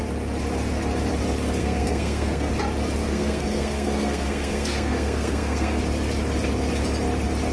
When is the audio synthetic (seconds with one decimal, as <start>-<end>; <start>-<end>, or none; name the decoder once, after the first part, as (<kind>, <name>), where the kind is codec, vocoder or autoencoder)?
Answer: 1.6-2.5 (codec, SNAC); 3.0-5.8